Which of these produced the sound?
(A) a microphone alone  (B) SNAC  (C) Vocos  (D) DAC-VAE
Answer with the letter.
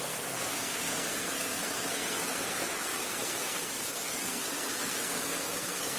B